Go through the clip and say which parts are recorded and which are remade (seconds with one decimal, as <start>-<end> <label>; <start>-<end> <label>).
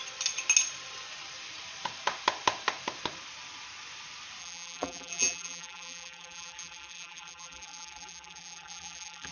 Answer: 0.0-4.4 recorded; 4.4-9.3 remade